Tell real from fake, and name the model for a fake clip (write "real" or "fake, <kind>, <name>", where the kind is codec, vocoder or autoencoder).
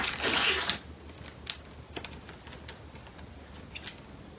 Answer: real